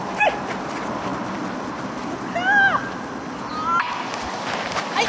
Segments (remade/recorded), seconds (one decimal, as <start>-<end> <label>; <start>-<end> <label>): 0.0-5.1 recorded